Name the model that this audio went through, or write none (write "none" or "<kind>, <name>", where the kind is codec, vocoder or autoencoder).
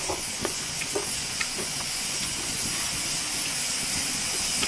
vocoder, Vocos